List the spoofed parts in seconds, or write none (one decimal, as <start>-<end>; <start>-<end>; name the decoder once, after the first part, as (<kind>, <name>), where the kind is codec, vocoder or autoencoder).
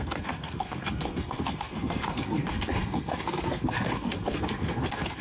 0.0-5.2 (codec, SNAC)